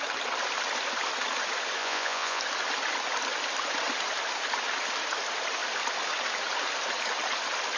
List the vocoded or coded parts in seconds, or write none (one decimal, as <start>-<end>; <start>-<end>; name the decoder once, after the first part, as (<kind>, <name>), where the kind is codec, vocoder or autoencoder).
1.8-2.4 (vocoder, Vocos)